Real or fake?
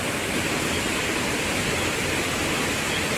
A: real